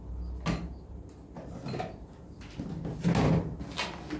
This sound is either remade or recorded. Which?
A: recorded